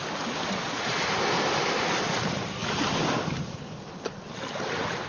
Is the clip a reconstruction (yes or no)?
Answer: no